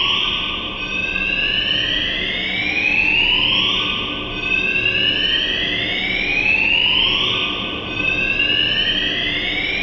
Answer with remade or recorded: recorded